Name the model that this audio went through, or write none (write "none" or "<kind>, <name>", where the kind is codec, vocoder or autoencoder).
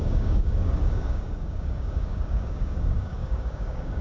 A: codec, DAC